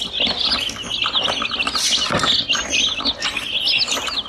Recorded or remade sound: recorded